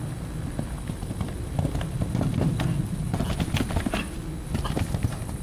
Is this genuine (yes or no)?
yes